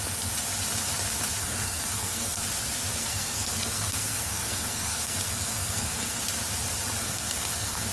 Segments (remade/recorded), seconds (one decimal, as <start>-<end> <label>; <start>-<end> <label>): 0.0-1.4 recorded; 1.4-2.4 remade; 2.4-2.9 recorded; 2.9-6.2 remade; 6.2-7.0 recorded; 7.0-7.9 remade